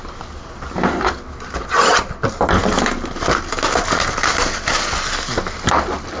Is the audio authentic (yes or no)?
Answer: yes